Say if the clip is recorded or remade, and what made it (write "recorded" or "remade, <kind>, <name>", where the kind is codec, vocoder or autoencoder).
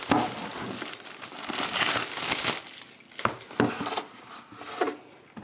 recorded